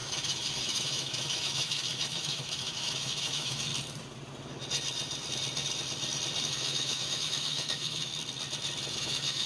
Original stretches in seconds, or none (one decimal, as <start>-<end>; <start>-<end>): 3.7-6.4; 8.1-8.9